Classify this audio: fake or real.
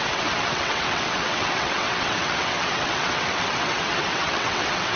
fake